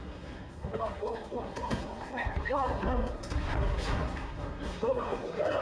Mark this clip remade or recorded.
remade